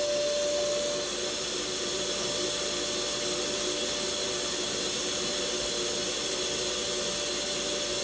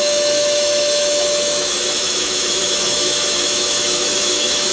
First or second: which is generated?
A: second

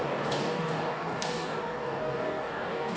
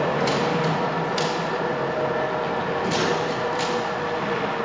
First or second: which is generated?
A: first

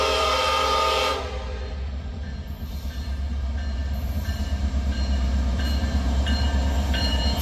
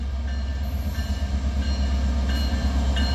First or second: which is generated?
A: first